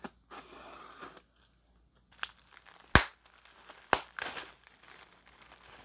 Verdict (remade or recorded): recorded